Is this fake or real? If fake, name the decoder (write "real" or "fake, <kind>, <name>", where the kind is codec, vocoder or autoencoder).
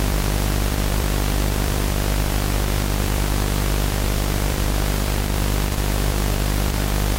fake, vocoder, BigVGAN v2